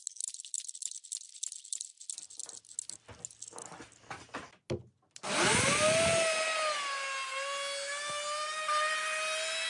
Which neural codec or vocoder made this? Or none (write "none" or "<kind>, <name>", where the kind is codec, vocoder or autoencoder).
none